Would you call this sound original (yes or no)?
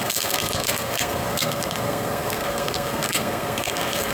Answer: no